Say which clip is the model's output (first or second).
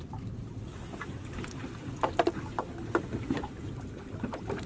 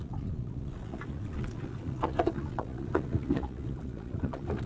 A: second